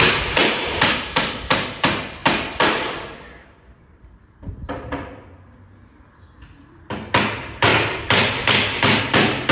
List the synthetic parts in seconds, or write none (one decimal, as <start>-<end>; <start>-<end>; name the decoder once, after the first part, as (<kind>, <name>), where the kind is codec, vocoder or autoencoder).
0.4-0.9 (vocoder, BigVGAN v2); 2.2-4.2; 7.7-9.0